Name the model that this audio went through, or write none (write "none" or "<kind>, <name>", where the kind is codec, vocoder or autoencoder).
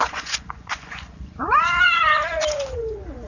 vocoder, Vocos